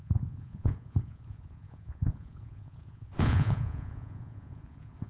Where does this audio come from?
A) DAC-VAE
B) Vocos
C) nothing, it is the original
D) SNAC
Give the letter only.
B